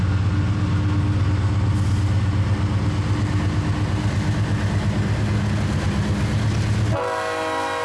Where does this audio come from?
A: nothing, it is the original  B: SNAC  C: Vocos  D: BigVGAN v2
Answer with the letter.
A